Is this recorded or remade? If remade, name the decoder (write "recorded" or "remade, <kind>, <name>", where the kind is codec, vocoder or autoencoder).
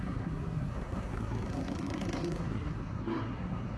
remade, codec, SNAC